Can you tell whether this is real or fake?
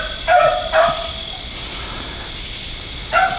real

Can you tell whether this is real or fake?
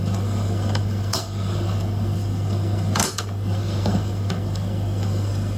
fake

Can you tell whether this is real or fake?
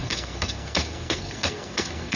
fake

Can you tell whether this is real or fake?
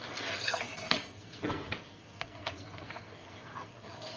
fake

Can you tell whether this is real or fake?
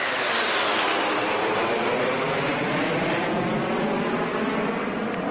real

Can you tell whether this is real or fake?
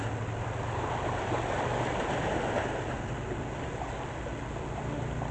real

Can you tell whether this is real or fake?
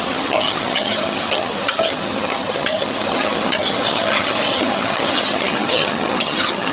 fake